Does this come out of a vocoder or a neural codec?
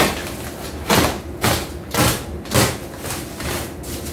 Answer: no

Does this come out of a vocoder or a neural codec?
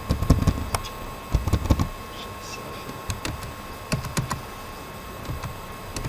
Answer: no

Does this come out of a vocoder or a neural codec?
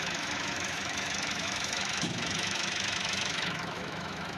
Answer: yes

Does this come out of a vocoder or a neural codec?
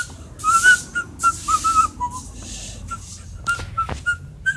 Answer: no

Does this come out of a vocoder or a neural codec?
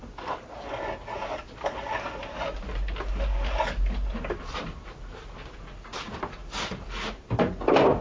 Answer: no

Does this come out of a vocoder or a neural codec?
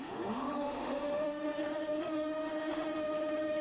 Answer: yes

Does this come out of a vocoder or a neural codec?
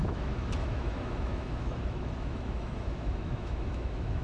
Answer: yes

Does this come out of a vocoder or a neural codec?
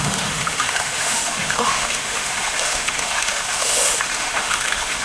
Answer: yes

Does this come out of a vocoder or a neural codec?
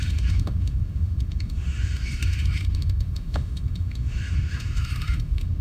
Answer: yes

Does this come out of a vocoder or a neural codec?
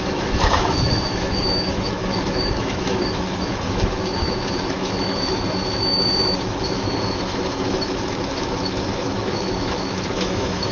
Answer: yes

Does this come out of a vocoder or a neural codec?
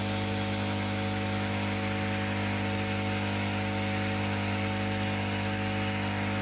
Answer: no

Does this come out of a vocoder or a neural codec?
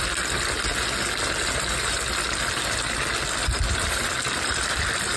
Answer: no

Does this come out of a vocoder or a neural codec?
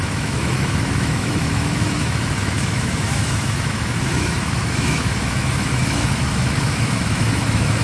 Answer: yes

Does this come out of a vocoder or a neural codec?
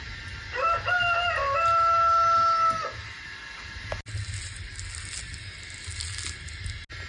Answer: no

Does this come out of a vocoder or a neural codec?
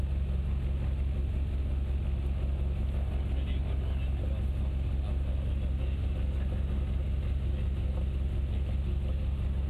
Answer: no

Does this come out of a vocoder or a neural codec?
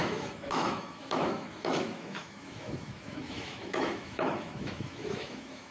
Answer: yes